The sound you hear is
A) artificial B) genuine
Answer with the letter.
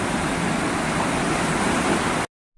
B